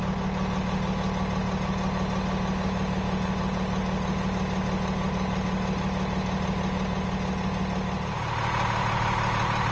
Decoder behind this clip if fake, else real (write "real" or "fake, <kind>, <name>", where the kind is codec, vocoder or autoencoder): real